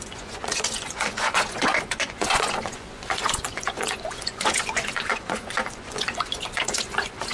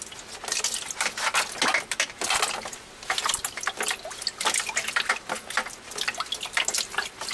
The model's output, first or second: first